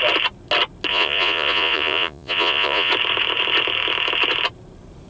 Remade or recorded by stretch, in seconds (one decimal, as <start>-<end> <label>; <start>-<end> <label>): 0.0-0.9 recorded; 0.9-2.9 remade; 2.9-5.1 recorded